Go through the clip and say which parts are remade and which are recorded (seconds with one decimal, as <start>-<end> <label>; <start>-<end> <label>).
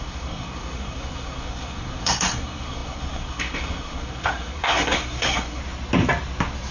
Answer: 0.0-5.6 remade; 5.6-6.7 recorded